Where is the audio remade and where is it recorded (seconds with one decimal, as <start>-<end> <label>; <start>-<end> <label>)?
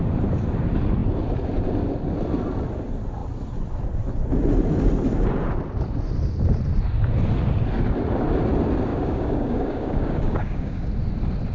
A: 0.0-8.9 recorded; 8.9-10.9 remade; 10.9-11.5 recorded